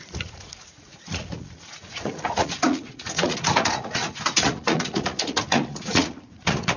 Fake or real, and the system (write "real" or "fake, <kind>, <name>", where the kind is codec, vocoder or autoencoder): fake, vocoder, Vocos